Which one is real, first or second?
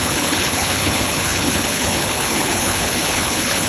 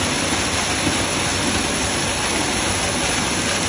second